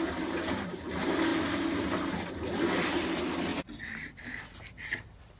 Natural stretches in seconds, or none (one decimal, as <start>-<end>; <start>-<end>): 0.0-5.4